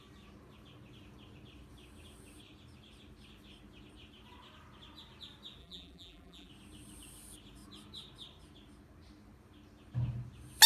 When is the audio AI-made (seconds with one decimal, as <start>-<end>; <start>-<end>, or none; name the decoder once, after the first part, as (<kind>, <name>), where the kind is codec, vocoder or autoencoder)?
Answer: 5.6-6.5 (vocoder, BigVGAN v2)